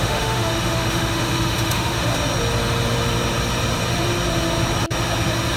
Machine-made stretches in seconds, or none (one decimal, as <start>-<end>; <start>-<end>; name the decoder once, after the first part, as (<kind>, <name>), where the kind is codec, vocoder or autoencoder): 0.0-2.1 (autoencoder, DAC-VAE)